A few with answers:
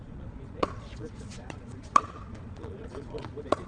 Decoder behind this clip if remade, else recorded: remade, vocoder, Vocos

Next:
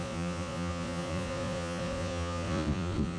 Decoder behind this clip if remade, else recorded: remade, vocoder, Vocos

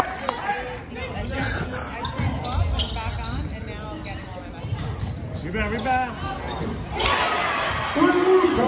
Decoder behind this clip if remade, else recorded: recorded